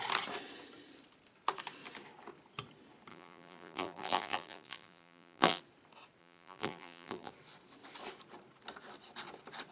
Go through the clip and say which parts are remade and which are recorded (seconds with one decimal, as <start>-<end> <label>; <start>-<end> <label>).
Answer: 0.0-3.1 recorded; 3.1-5.6 remade; 5.6-6.2 recorded; 6.2-7.3 remade; 7.3-9.7 recorded